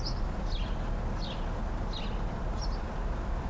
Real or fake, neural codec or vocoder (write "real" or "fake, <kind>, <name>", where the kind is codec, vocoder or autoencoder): real